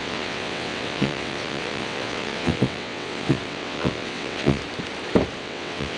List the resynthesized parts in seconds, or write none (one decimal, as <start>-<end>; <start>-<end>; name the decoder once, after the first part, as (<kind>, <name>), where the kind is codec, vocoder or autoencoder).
0.0-4.6 (vocoder, WaveNeXt); 5.4-6.0